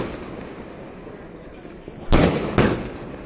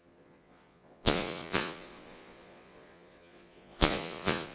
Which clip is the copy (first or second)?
second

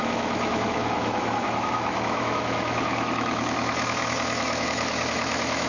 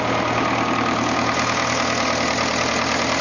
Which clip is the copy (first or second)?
first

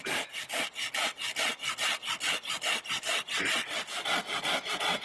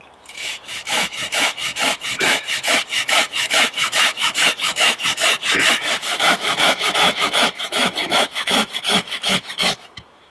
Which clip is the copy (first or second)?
second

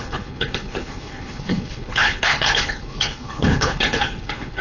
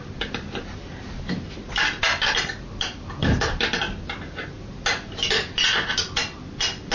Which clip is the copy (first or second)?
first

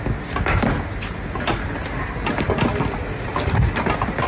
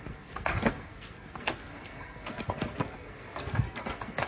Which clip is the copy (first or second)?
second